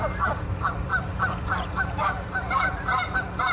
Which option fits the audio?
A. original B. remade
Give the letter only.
A